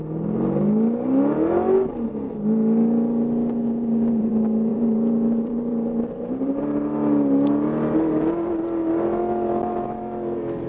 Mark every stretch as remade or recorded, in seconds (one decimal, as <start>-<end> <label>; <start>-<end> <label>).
0.0-3.6 recorded; 3.6-4.3 remade; 4.3-4.7 recorded; 4.7-6.6 remade; 6.6-10.7 recorded